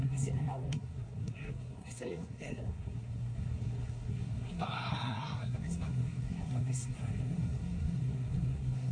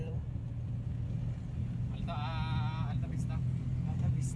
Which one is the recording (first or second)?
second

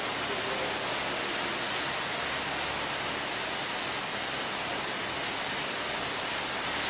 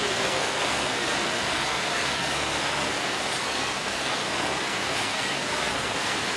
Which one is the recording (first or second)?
first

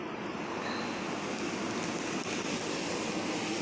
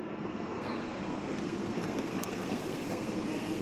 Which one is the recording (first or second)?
first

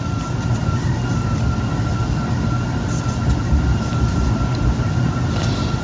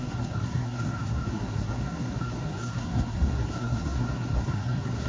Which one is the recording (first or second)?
first